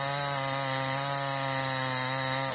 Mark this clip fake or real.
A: real